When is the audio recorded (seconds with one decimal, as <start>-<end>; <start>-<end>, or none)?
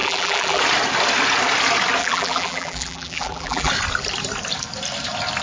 0.6-2.0; 3.7-5.4